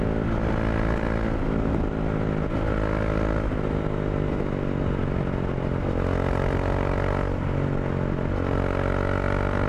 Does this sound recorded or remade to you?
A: recorded